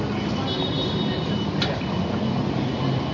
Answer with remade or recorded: recorded